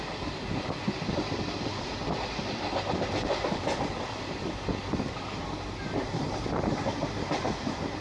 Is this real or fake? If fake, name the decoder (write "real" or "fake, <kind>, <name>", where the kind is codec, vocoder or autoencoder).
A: fake, vocoder, BigVGAN v2